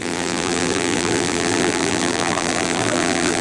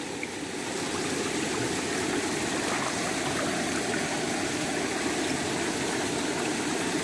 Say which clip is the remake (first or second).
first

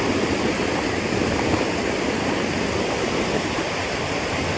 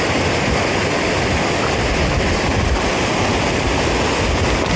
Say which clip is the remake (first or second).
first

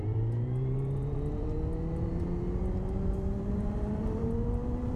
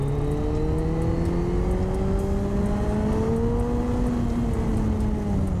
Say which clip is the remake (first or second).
first